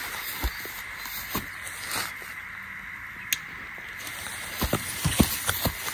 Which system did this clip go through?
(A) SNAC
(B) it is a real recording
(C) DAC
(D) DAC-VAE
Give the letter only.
B